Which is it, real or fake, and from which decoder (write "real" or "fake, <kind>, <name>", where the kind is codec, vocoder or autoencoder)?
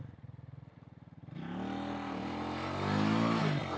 real